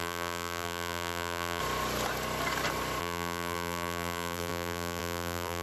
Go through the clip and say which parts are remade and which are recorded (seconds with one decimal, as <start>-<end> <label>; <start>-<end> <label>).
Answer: 0.0-1.6 remade; 1.6-3.0 recorded; 3.0-5.6 remade